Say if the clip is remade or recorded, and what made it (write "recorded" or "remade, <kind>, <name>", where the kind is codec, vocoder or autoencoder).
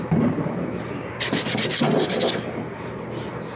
recorded